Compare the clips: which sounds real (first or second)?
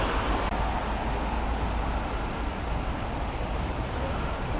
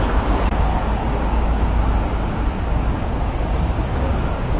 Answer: first